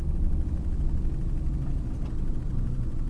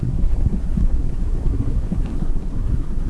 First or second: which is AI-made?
second